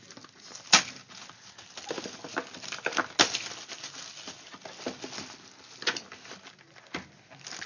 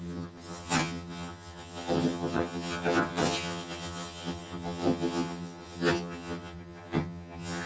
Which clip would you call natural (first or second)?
first